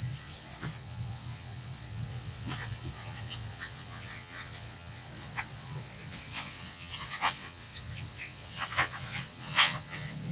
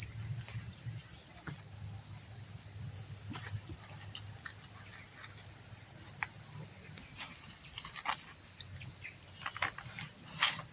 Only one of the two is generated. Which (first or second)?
first